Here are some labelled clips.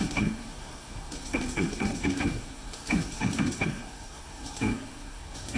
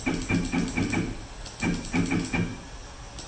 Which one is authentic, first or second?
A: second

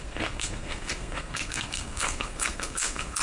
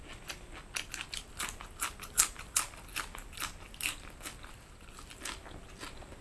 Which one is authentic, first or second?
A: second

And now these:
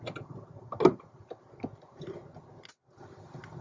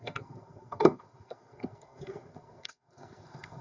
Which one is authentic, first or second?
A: first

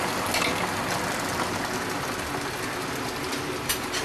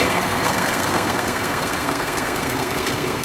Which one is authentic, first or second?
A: first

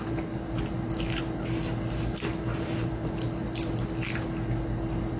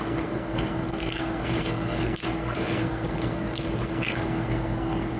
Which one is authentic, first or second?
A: first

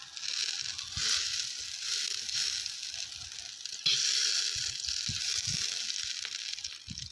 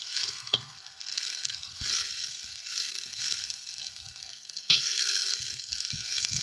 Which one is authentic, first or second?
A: first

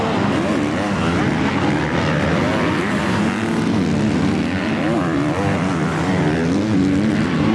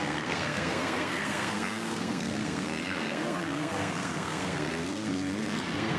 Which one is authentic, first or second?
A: first